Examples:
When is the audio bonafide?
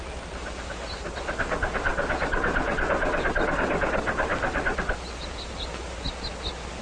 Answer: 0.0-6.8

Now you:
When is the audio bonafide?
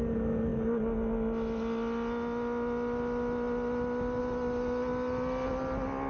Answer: 0.0-6.1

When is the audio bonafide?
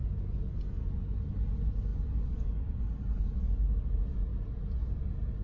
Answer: 1.2-5.4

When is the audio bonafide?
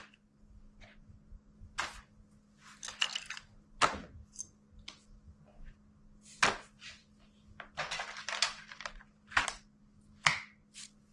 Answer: 0.0-11.1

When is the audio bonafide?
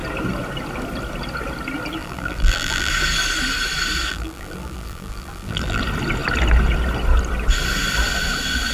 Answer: 0.0-2.0; 2.9-4.1; 5.8-8.7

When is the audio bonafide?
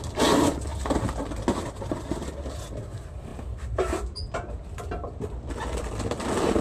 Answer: 0.0-6.6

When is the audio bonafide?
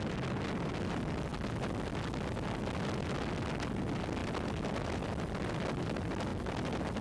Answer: 0.0-4.2; 5.5-7.0